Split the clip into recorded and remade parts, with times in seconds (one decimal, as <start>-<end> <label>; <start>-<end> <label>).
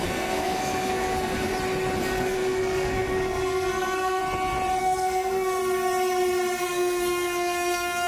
0.0-1.5 remade; 1.5-2.0 recorded; 2.0-4.2 remade; 4.2-4.8 recorded; 4.8-5.6 remade; 5.6-6.6 recorded; 6.6-8.1 remade